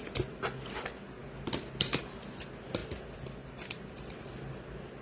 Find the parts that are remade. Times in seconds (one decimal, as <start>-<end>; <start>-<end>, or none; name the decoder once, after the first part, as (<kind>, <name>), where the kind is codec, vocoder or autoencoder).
none

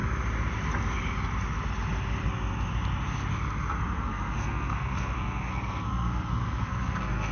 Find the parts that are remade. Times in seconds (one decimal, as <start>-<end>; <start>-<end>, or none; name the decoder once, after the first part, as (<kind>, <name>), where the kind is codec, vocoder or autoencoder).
4.0-7.3 (codec, SNAC)

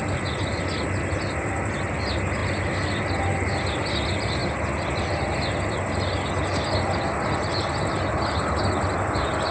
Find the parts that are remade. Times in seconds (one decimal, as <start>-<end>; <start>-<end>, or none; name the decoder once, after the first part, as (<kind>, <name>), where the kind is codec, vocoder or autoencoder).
none

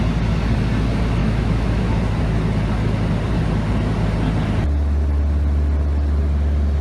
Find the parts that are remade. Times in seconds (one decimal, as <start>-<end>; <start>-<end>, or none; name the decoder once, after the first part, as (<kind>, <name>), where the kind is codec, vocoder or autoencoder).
1.2-2.0 (autoencoder, DAC-VAE)

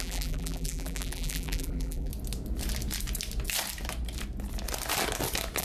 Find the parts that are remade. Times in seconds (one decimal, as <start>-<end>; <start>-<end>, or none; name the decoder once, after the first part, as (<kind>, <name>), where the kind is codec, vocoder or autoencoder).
0.0-2.1 (vocoder, BigVGAN v2)